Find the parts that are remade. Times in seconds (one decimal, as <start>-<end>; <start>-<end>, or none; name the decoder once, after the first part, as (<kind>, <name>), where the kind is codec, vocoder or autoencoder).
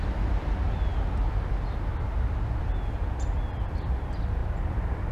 none